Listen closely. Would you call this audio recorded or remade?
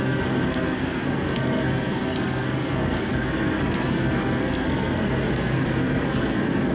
remade